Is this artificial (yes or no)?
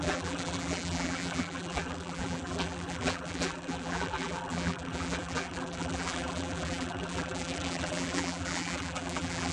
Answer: yes